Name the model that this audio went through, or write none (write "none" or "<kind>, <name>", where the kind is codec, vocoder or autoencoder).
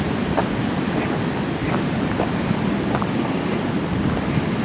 none